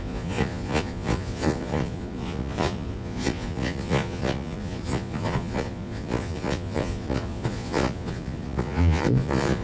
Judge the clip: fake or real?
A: fake